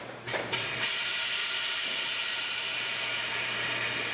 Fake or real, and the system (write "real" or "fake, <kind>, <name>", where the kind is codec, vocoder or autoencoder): fake, vocoder, BigVGAN v2